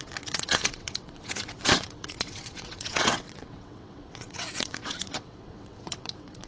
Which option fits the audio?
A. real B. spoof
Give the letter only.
B